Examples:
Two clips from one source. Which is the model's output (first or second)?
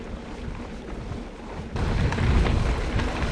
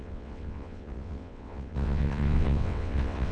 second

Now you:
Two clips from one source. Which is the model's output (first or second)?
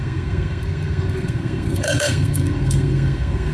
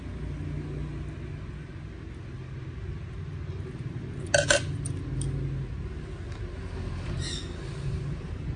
first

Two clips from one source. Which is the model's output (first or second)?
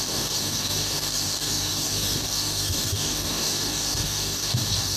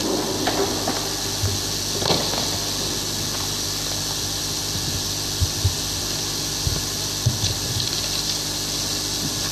first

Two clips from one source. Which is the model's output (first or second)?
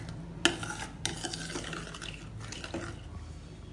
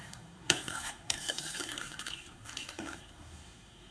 second